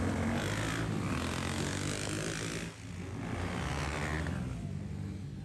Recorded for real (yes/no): yes